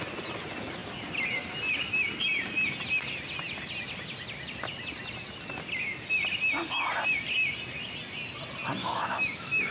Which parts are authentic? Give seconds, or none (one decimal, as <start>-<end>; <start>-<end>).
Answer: 0.0-8.8